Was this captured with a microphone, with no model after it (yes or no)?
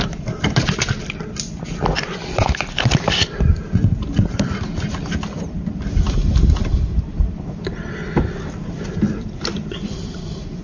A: no